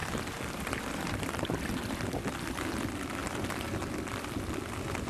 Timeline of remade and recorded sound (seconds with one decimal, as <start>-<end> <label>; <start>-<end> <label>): 0.0-2.0 remade; 2.0-5.1 recorded